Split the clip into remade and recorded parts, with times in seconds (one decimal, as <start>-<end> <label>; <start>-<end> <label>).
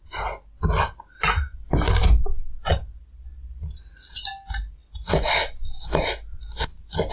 0.0-7.1 recorded